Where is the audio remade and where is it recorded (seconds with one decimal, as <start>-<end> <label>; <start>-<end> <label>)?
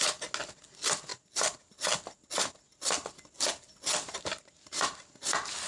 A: 0.0-5.7 recorded